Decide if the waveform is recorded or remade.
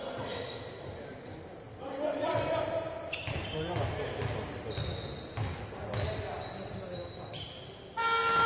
recorded